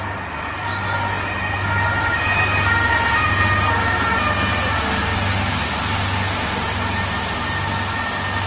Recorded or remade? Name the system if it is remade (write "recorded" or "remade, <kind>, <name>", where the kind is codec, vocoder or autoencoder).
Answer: recorded